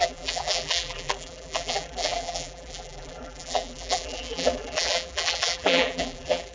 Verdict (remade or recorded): remade